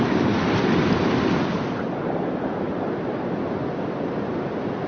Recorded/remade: recorded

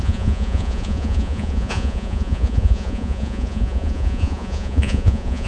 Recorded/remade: remade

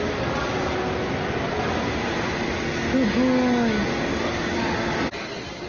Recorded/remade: recorded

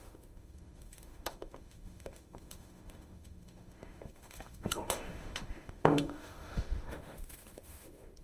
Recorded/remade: remade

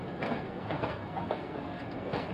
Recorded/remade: remade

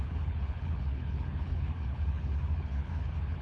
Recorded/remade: remade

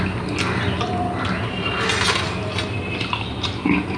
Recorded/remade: recorded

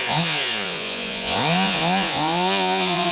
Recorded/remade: remade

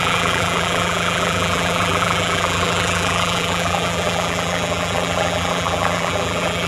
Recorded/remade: remade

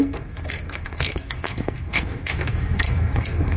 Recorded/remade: remade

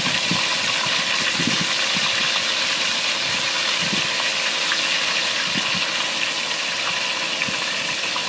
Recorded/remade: recorded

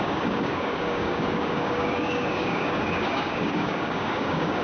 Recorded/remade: remade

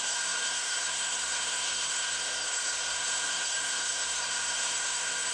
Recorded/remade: remade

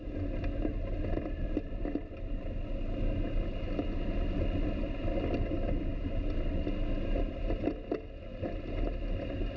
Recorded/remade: recorded